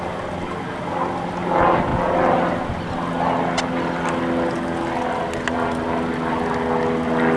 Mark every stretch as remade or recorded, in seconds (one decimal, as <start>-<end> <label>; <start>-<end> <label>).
0.0-7.4 recorded